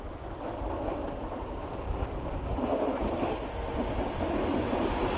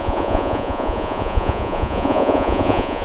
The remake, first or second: second